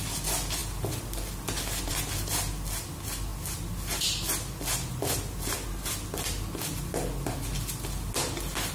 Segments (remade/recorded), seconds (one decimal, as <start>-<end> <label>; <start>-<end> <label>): 0.0-8.7 recorded